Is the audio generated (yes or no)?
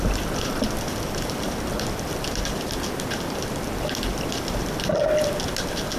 no